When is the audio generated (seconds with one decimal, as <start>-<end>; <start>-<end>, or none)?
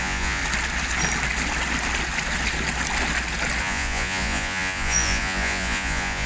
0.0-0.4; 3.6-6.3